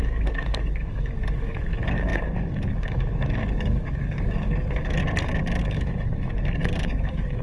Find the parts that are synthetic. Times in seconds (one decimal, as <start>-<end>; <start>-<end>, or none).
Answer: 0.0-5.0; 5.6-7.4